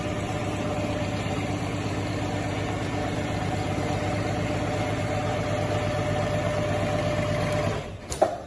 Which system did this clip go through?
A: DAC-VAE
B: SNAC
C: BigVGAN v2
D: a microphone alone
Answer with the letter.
D